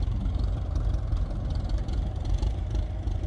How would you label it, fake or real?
fake